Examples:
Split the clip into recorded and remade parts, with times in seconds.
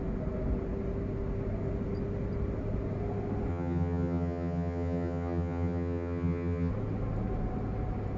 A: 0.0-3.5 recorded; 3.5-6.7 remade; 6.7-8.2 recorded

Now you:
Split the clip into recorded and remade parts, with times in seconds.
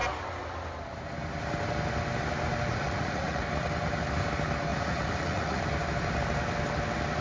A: 0.0-2.7 recorded; 2.7-3.4 remade; 3.4-4.7 recorded; 4.7-5.6 remade; 5.6-7.2 recorded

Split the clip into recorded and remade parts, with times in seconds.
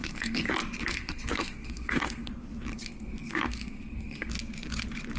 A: 0.0-0.5 remade; 0.5-0.9 recorded; 0.9-2.3 remade; 2.3-2.7 recorded; 2.7-4.3 remade; 4.3-5.2 recorded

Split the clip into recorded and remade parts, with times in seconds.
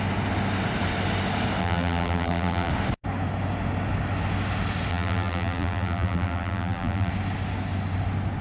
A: 0.0-1.6 recorded; 1.6-2.7 remade; 2.7-4.9 recorded; 4.9-7.1 remade; 7.1-8.4 recorded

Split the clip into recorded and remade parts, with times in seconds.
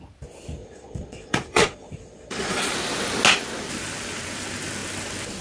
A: 0.0-0.6 recorded; 0.6-2.7 remade; 2.7-5.4 recorded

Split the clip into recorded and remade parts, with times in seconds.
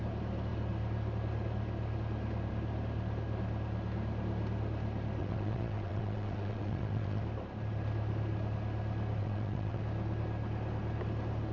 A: 0.0-5.2 recorded; 5.2-7.2 remade; 7.2-9.2 recorded; 9.2-9.8 remade; 9.8-11.5 recorded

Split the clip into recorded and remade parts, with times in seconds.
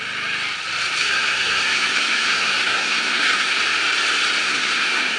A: 0.0-1.0 recorded; 1.0-3.6 remade; 3.6-4.4 recorded; 4.4-5.2 remade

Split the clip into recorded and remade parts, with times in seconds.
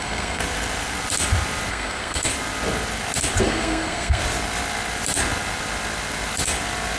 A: 0.0-0.4 remade; 0.4-1.7 recorded; 1.7-2.3 remade; 2.3-3.4 recorded; 3.4-4.2 remade; 4.2-7.0 recorded